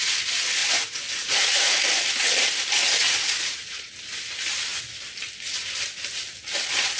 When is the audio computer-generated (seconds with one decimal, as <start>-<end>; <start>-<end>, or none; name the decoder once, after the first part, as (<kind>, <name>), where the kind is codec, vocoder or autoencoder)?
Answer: 0.6-1.8 (vocoder, Vocos); 3.0-3.9

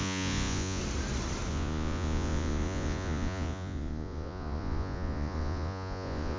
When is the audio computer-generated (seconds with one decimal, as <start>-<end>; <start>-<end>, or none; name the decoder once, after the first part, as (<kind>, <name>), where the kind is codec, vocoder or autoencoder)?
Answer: 0.0-0.8 (vocoder, Vocos); 1.5-6.4

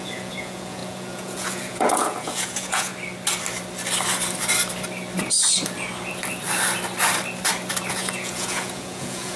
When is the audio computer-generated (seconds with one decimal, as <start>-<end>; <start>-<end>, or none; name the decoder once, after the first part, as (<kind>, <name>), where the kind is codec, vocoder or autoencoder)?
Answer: 0.0-2.9 (vocoder, Vocos); 7.9-9.4